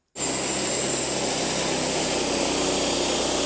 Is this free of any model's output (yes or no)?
yes